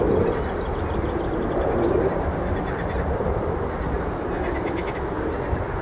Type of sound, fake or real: real